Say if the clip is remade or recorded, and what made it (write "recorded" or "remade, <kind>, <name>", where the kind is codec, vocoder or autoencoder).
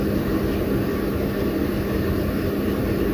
recorded